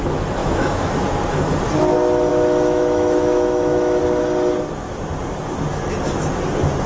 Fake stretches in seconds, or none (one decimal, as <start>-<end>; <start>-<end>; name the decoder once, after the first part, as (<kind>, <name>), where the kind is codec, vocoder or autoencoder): 0.4-1.0 (autoencoder, DAC-VAE); 2.3-4.0